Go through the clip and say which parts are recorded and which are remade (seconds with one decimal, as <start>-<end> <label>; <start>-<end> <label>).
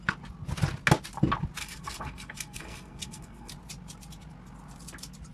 0.0-1.6 recorded; 1.6-3.5 remade; 3.5-5.3 recorded